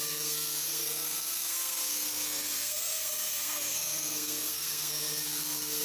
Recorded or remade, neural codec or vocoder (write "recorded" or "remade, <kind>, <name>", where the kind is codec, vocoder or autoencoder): remade, codec, SNAC